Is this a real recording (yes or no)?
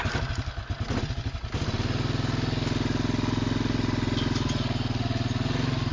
yes